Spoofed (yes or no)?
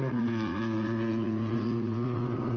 yes